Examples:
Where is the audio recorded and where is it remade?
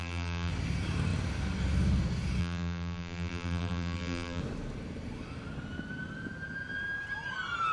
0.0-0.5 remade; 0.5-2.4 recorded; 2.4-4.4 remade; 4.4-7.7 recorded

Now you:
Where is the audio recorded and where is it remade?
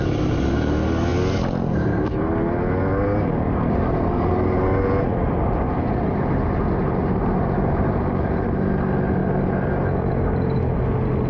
0.0-5.1 recorded; 5.1-6.2 remade; 6.2-11.3 recorded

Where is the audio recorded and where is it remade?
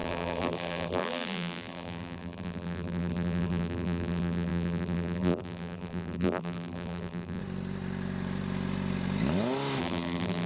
0.0-7.4 remade; 7.4-9.8 recorded; 9.8-10.5 remade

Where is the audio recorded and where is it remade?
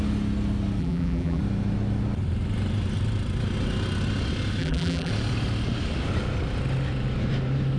0.0-0.8 recorded; 0.8-1.4 remade; 1.4-4.6 recorded; 4.6-5.1 remade; 5.1-7.8 recorded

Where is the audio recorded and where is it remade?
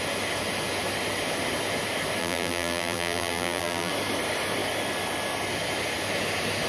0.0-2.2 recorded; 2.2-3.9 remade; 3.9-6.7 recorded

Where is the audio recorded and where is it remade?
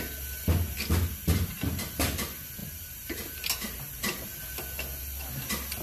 0.0-1.2 recorded; 1.2-1.9 remade; 1.9-2.6 recorded; 2.6-4.4 remade; 4.4-5.8 recorded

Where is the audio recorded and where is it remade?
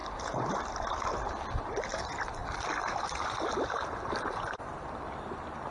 0.0-5.7 recorded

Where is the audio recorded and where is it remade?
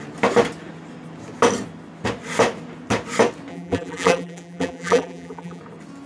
0.0-3.5 recorded; 3.5-5.6 remade; 5.6-6.1 recorded